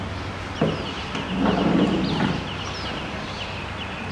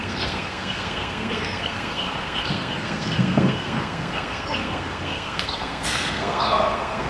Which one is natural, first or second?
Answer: first